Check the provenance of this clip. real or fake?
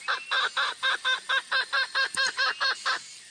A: real